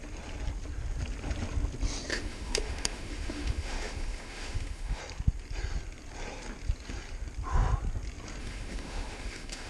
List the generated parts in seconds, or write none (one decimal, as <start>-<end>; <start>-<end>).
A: 2.1-5.0; 8.4-9.7